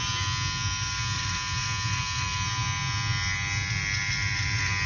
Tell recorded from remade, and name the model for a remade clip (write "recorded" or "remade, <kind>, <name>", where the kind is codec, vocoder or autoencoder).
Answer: recorded